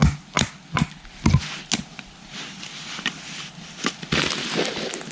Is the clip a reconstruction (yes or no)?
no